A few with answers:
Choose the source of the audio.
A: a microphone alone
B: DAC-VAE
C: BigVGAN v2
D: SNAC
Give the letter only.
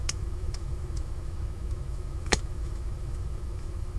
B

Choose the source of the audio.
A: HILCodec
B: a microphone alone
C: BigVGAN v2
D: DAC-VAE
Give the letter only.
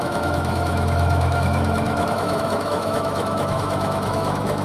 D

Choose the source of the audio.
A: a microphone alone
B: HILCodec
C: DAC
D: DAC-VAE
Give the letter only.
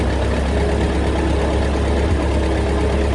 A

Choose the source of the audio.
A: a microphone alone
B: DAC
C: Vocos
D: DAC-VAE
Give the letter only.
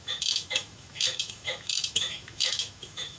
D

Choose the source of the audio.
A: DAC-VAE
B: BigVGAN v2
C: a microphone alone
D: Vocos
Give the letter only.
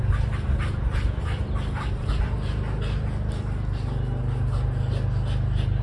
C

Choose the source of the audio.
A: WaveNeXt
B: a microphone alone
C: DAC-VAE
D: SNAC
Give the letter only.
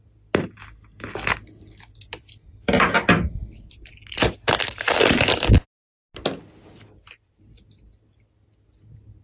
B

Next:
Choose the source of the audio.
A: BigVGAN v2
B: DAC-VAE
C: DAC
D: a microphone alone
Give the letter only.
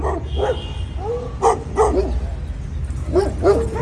D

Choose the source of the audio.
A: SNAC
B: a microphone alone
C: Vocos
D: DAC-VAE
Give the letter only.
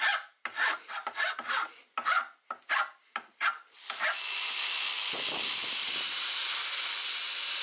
B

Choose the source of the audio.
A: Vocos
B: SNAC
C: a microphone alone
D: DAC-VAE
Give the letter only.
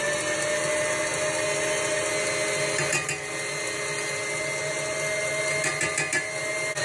C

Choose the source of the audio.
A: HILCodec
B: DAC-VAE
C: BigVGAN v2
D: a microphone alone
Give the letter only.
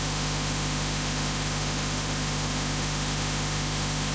B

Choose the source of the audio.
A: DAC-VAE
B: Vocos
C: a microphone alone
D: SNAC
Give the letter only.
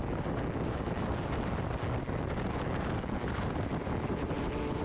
C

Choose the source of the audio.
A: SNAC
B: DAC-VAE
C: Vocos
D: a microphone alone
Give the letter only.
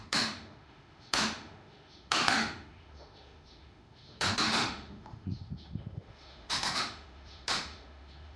B